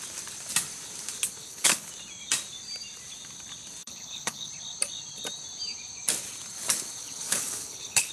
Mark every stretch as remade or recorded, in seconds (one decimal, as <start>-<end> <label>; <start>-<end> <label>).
0.0-1.4 recorded; 1.4-1.9 remade; 1.9-3.8 recorded; 3.8-4.5 remade; 4.5-7.0 recorded; 7.0-8.1 remade